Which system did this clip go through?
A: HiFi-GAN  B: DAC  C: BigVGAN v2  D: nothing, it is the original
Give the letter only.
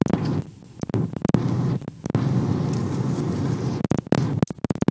D